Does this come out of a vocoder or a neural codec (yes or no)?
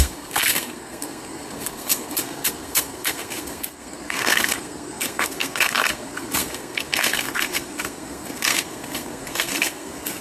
yes